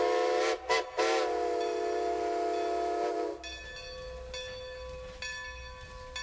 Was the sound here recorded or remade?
recorded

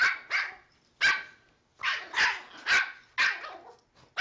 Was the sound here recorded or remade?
recorded